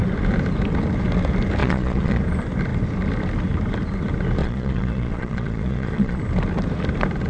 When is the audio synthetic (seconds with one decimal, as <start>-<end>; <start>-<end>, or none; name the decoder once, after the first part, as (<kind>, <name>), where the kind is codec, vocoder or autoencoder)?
1.6-2.2 (vocoder, Vocos); 4.4-6.2